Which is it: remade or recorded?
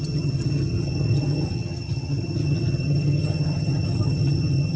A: remade